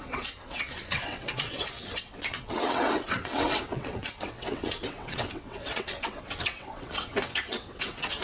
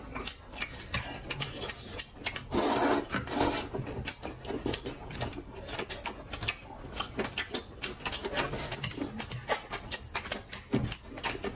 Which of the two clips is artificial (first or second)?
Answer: first